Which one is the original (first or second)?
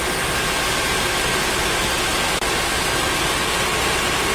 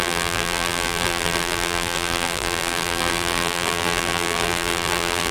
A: first